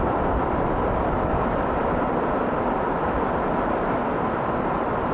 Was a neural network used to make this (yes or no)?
yes